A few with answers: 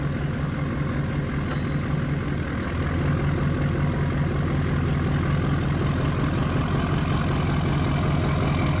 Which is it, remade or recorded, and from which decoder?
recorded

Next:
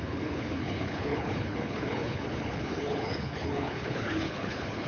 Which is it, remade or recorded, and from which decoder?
remade, codec, HILCodec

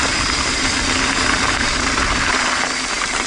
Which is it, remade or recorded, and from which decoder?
recorded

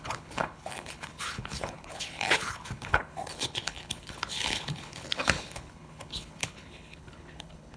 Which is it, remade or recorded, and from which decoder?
remade, codec, HILCodec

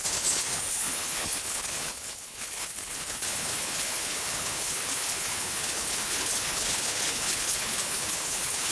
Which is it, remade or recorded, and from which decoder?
remade, codec, HILCodec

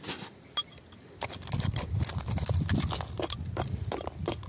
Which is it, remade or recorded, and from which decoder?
recorded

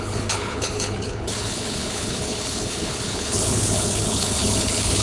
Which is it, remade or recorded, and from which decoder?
remade, codec, HILCodec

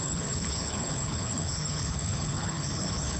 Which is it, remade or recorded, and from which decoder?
remade, codec, HILCodec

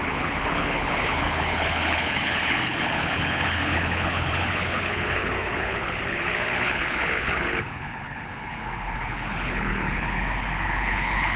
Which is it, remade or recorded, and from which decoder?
remade, codec, HILCodec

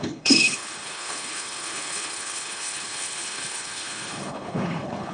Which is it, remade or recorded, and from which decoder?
remade, codec, HILCodec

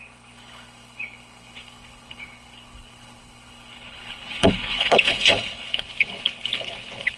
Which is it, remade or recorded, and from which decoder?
remade, codec, HILCodec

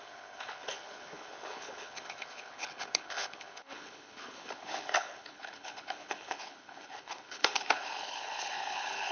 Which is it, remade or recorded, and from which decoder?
remade, codec, HILCodec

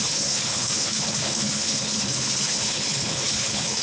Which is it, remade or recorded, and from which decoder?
remade, codec, HILCodec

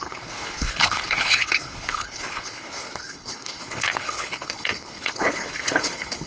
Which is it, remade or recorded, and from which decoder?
remade, codec, HILCodec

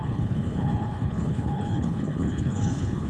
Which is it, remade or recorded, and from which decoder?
remade, codec, HILCodec